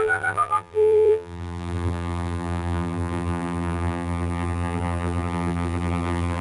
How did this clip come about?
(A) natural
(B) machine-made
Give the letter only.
B